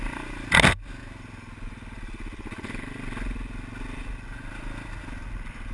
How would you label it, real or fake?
real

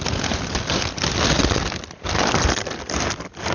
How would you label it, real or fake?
real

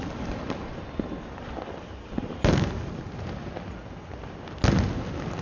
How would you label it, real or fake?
real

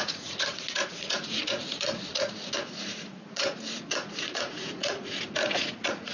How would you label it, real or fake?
fake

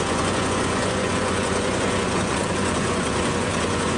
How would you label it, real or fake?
fake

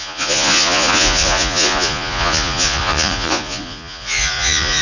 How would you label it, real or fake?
fake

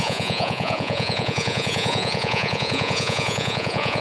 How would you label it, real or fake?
fake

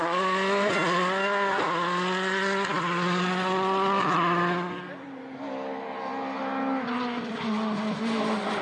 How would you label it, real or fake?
real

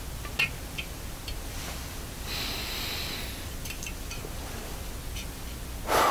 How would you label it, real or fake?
real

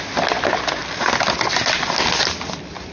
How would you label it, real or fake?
real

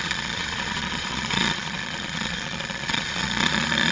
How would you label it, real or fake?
fake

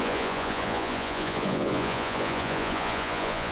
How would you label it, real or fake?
fake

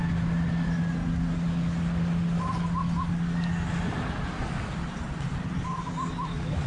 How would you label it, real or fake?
real